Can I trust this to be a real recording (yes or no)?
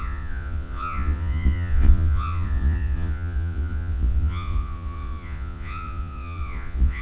no